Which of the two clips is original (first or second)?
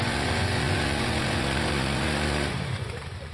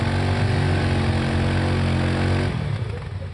second